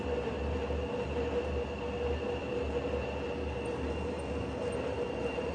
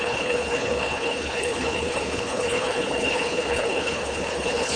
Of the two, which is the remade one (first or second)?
second